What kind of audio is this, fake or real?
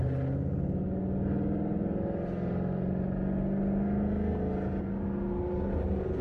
real